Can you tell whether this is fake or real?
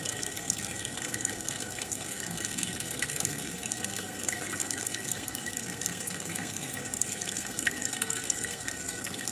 fake